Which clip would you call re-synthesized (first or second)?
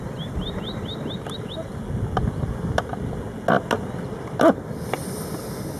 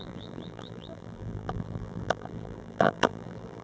second